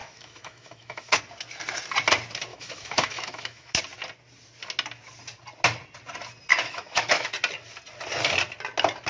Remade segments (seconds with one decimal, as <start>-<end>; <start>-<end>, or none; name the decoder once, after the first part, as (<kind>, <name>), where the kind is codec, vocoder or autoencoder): 0.0-1.2 (autoencoder, DAC-VAE); 2.5-3.8; 6.5-7.3